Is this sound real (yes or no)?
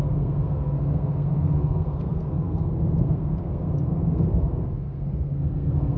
no